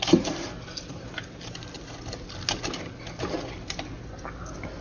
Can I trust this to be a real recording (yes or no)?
yes